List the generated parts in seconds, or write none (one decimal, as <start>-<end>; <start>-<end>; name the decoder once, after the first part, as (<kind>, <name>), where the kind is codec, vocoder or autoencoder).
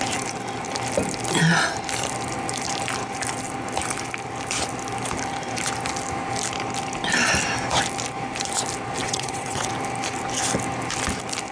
9.0-9.7 (vocoder, WaveNeXt)